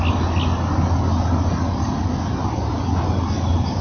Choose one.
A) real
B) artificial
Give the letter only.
A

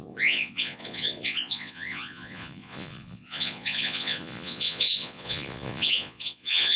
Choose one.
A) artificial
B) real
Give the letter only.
A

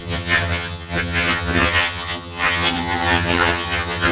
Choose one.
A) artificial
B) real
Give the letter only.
A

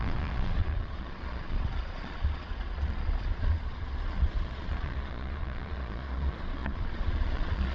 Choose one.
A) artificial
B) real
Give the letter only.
A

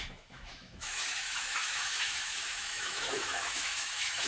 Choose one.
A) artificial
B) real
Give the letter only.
A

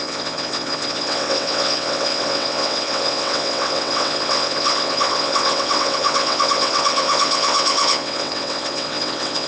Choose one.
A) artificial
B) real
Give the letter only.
A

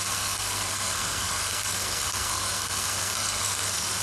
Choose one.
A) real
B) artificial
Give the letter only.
B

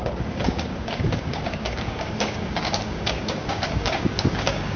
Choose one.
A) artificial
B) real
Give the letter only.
A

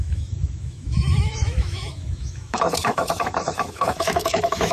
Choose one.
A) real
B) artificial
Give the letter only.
B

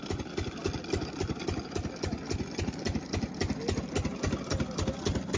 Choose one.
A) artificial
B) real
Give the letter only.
B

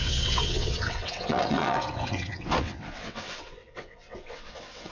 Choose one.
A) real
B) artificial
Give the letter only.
B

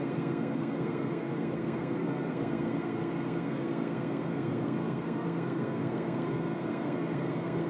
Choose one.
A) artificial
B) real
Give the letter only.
A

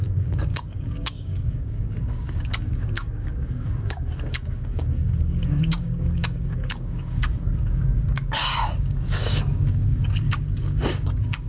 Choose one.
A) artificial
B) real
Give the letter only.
A